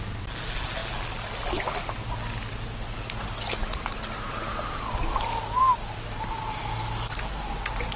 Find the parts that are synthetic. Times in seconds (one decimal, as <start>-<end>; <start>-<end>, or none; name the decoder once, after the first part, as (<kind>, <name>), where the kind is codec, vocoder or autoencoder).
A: none